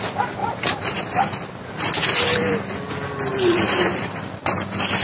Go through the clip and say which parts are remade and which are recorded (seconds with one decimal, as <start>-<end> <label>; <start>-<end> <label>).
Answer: 0.0-0.4 recorded; 0.4-1.2 remade; 1.2-2.1 recorded; 2.1-2.7 remade; 2.7-3.3 recorded; 3.3-4.2 remade; 4.2-5.0 recorded